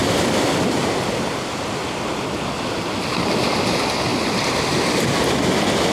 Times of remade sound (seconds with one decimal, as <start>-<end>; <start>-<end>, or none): none